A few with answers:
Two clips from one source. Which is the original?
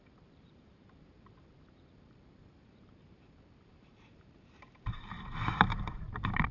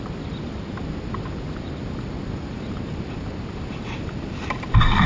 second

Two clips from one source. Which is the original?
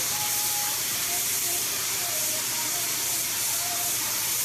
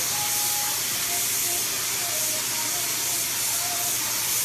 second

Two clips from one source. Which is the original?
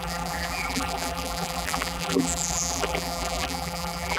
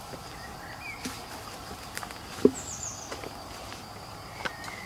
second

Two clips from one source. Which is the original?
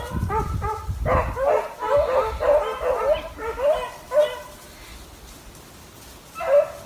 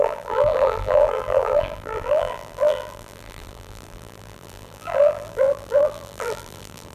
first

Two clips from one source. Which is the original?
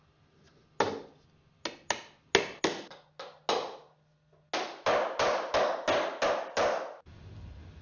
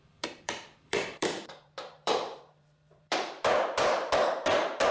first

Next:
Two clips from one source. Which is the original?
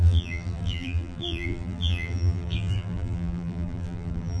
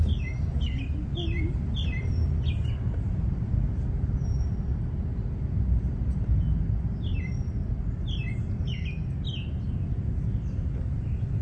second